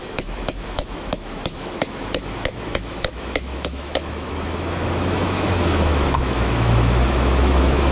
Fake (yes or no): yes